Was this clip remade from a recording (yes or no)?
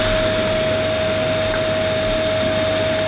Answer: no